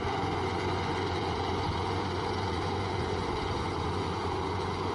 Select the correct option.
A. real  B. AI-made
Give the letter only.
B